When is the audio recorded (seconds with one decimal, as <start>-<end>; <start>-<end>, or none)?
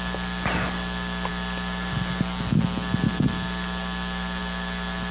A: 0.0-5.1